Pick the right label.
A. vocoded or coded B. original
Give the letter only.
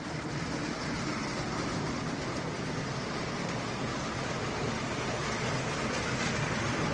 B